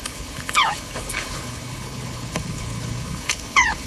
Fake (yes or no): yes